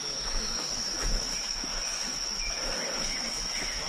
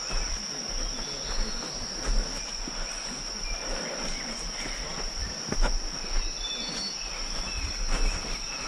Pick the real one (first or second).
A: second